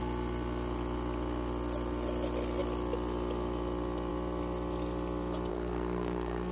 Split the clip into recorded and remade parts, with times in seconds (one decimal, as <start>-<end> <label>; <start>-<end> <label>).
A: 0.0-5.5 recorded; 5.5-6.5 remade